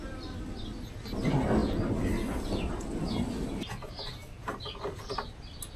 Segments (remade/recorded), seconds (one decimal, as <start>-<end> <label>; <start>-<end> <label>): 0.0-5.8 recorded